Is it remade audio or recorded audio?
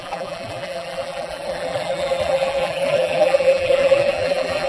remade